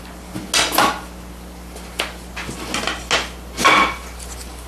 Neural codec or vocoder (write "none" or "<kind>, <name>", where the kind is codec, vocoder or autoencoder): none